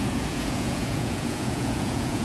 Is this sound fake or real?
fake